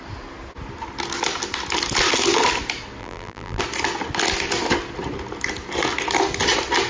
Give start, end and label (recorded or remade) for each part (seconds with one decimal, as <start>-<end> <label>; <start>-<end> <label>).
0.0-3.0 recorded; 3.0-3.6 remade; 3.6-6.9 recorded